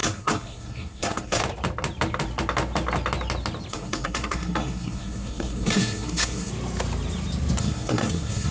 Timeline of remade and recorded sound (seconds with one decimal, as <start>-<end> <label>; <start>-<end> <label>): 0.0-1.4 remade; 1.4-3.7 recorded; 3.7-6.5 remade; 6.5-7.6 recorded; 7.6-8.5 remade